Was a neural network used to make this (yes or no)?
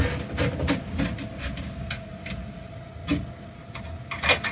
no